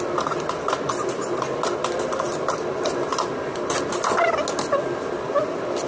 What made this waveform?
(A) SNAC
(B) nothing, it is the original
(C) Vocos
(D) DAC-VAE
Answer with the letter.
B